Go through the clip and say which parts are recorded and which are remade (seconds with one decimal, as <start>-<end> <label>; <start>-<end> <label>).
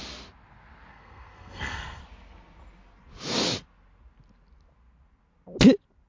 0.0-0.9 recorded; 0.9-2.0 remade; 2.0-6.1 recorded